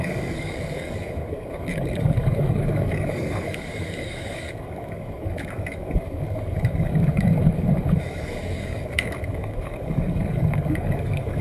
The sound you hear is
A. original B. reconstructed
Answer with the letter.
B